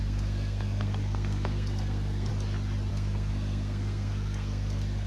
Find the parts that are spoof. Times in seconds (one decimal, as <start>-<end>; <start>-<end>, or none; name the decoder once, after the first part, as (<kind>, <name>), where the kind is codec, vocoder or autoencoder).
0.0-2.3 (codec, SNAC); 2.9-5.1